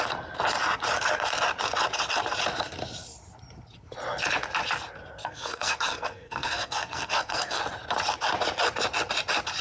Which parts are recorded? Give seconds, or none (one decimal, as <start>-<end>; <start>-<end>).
0.0-5.2; 7.6-9.6